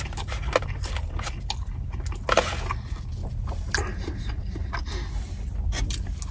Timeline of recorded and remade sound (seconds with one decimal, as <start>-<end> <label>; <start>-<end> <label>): 0.0-3.2 recorded; 3.2-4.7 remade; 4.7-6.3 recorded